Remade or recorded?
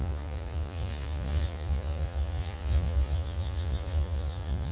remade